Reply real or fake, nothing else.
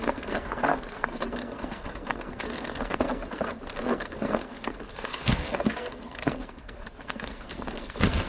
fake